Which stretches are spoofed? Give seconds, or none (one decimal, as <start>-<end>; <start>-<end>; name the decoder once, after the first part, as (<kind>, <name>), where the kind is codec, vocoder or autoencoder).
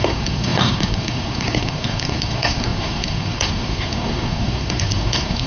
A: 0.0-5.5 (codec, SNAC)